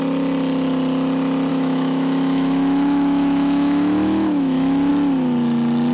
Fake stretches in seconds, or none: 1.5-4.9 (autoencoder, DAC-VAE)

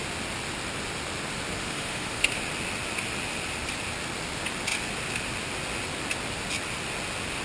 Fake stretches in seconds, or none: 1.6-2.4 (autoencoder, DAC-VAE)

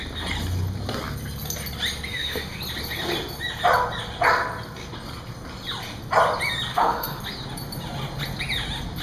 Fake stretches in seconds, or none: 2.1-2.6 (autoencoder, DAC-VAE); 6.7-7.2

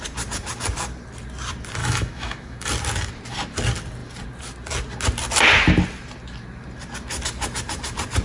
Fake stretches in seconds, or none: 1.8-2.7 (autoencoder, DAC-VAE)

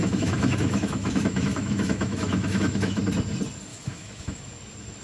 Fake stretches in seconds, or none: 0.0-3.0 (autoencoder, DAC-VAE); 3.7-4.4

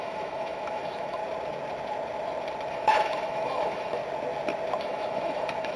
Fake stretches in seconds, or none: 0.0-1.2 (autoencoder, DAC-VAE); 2.7-4.0; 4.8-5.8

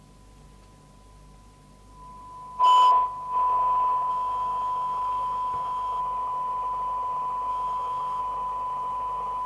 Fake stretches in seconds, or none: 4.1-6.0 (autoencoder, DAC-VAE); 7.5-8.2

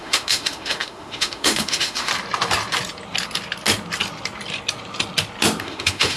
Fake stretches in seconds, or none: 0.0-2.1 (autoencoder, DAC-VAE); 5.6-6.2